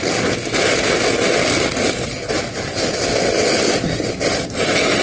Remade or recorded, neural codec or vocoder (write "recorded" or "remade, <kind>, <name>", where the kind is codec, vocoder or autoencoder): recorded